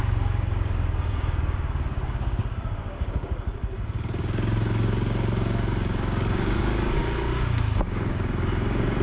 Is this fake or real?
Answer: fake